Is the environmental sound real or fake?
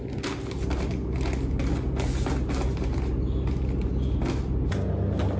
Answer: real